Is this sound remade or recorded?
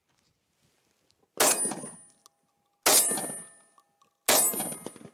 recorded